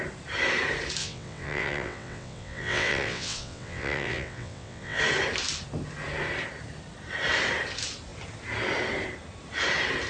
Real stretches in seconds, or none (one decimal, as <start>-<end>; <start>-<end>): 0.0-1.0; 5.0-10.1